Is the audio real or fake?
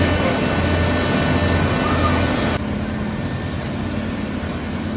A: real